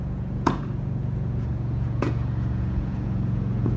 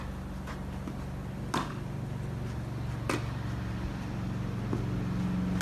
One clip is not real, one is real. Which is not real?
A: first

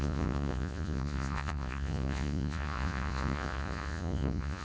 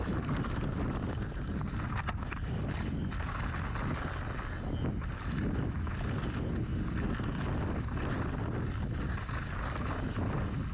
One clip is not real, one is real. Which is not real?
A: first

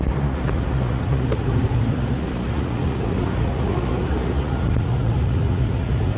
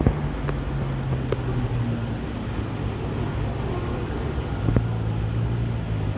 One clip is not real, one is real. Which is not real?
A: first